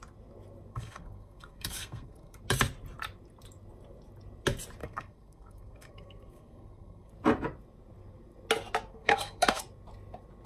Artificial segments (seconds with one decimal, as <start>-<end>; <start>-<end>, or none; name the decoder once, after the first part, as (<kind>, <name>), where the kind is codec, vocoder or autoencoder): 0.7-2.4 (codec, SNAC); 4.8-7.1; 8.9-9.6